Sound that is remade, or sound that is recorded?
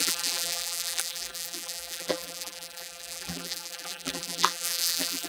remade